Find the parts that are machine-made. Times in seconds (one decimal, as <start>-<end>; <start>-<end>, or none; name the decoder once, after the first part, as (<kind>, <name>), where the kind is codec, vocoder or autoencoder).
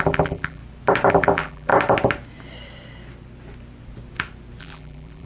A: 0.0-0.6 (vocoder, BigVGAN v2); 1.1-1.7; 4.6-5.3